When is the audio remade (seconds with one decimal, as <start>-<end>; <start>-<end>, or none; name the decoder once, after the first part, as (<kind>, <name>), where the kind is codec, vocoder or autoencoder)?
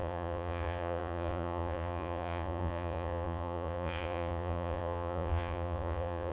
0.0-6.3 (vocoder, Vocos)